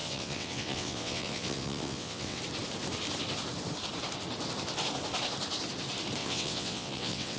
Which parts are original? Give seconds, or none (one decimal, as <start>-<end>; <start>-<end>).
2.4-6.2

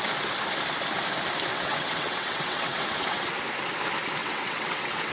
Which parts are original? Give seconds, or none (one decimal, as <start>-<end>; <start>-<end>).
0.0-1.5; 3.2-4.2

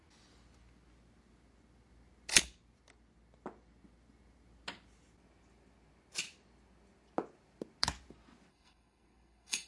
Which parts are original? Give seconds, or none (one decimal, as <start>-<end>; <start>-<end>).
0.0-8.5

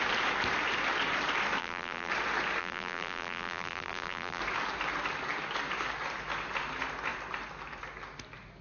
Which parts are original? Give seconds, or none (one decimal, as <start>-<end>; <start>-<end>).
0.0-1.6; 2.1-2.6; 4.4-8.6

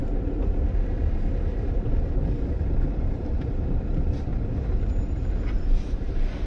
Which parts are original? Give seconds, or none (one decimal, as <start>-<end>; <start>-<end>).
none

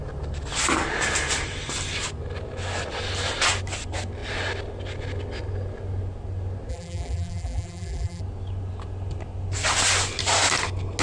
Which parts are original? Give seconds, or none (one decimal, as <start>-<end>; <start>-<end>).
0.0-6.7; 8.2-11.0

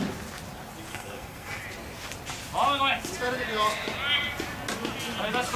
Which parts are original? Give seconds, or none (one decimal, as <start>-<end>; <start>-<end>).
0.0-0.9; 1.6-5.6

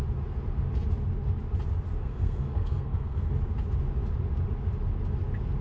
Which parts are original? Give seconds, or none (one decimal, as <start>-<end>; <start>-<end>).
0.0-2.0; 3.3-5.6